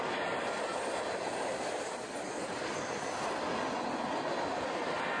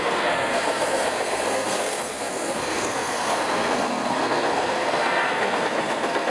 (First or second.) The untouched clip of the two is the first